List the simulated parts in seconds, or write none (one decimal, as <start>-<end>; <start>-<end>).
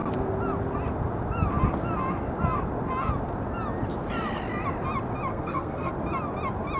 5.3-5.9